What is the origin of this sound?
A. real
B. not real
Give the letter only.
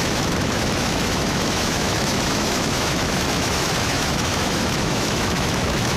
B